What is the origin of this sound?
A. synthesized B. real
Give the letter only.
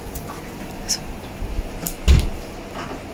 B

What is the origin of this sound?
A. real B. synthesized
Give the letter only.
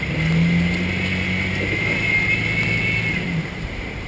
A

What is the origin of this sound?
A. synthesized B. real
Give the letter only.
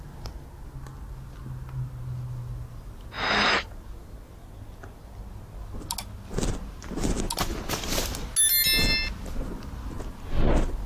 B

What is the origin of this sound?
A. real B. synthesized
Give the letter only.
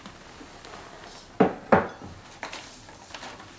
A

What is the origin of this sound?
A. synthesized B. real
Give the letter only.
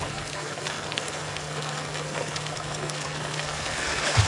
A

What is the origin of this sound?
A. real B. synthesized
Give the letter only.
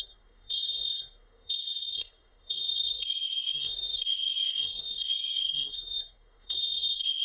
B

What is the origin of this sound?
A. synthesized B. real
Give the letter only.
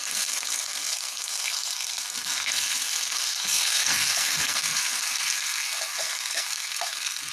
A